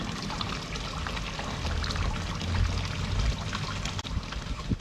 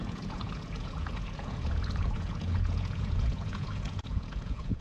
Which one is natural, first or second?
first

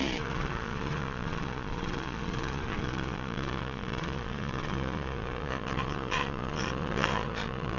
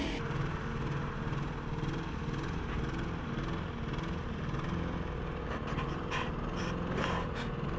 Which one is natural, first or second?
second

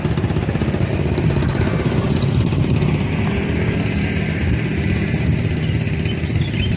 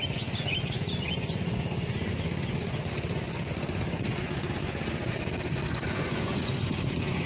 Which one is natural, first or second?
first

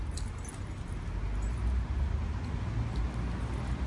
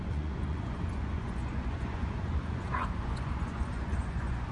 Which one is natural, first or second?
first